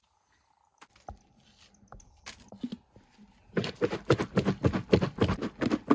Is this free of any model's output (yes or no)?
yes